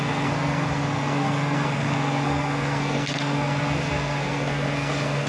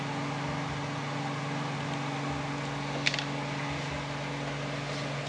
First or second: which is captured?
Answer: second